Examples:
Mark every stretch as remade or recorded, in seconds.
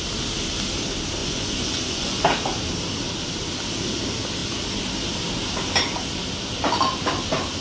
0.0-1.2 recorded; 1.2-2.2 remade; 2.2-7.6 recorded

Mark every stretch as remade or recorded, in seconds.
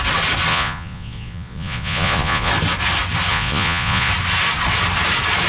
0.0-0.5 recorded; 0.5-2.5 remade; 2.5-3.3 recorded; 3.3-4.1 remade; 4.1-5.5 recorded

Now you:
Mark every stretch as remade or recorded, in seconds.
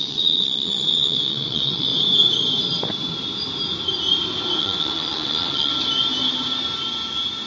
0.0-1.9 remade; 1.9-4.6 recorded; 4.6-5.7 remade; 5.7-7.5 recorded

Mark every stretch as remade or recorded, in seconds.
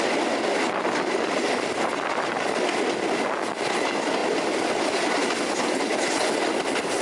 0.0-7.0 recorded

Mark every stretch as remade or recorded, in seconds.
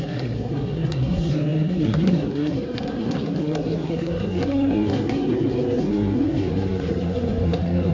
0.0-7.9 remade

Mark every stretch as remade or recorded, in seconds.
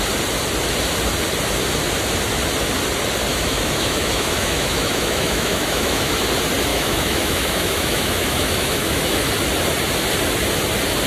0.0-3.3 recorded; 3.3-6.1 remade; 6.1-6.7 recorded; 6.7-9.3 remade; 9.3-11.1 recorded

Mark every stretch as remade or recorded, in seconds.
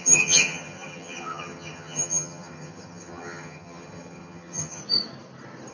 0.0-4.8 remade; 4.8-5.7 recorded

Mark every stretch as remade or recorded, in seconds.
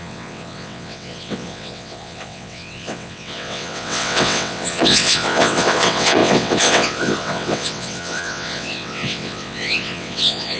0.0-10.6 remade